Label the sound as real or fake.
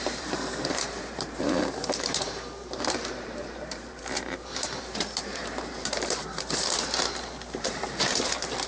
fake